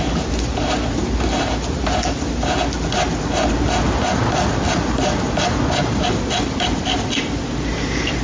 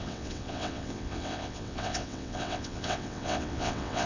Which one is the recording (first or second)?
first